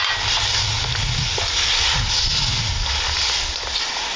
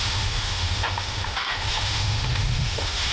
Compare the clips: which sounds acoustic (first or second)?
first